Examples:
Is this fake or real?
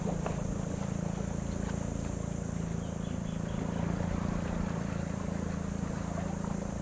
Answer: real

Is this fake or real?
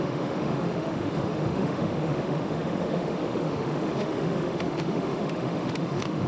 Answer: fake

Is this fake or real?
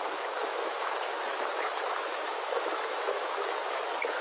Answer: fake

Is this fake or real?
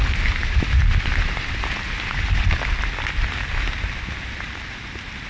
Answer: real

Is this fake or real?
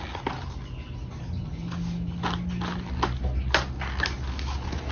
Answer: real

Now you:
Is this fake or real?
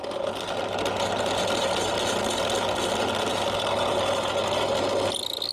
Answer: real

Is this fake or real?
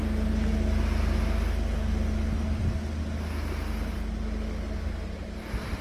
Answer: real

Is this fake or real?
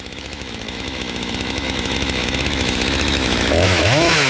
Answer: fake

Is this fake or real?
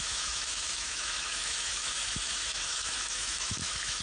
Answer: fake